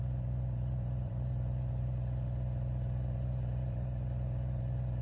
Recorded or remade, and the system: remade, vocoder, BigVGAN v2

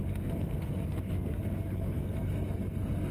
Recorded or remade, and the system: remade, codec, SNAC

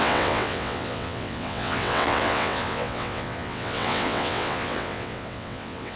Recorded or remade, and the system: remade, vocoder, WaveNeXt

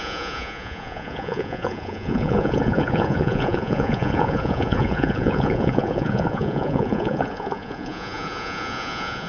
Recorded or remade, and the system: remade, vocoder, Vocos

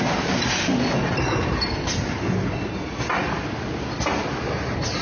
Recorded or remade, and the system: recorded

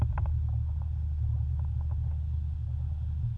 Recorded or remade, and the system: recorded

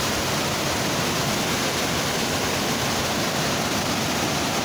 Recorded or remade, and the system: recorded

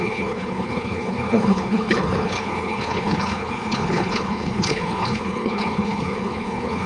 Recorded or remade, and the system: remade, codec, HILCodec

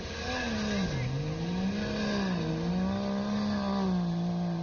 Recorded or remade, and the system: recorded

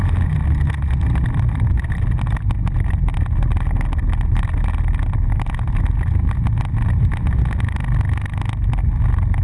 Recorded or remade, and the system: recorded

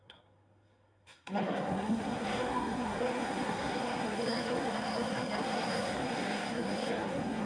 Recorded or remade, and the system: remade, codec, SNAC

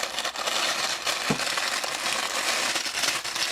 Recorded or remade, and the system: recorded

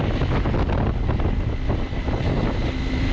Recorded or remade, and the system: recorded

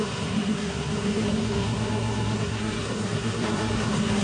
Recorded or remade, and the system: remade, codec, SNAC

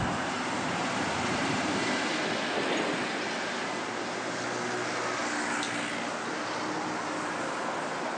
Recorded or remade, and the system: recorded